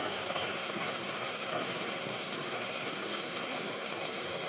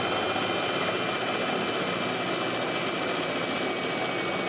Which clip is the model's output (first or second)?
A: first